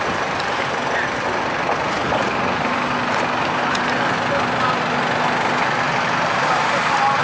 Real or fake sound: real